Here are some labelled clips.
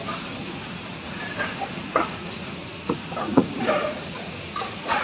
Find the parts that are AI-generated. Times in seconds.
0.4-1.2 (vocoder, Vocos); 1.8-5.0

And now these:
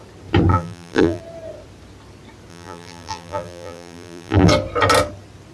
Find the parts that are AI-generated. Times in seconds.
0.5-1.2 (vocoder, BigVGAN v2); 2.5-4.5

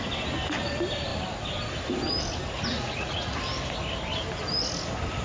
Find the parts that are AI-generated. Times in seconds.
2.7-3.4 (vocoder, Vocos)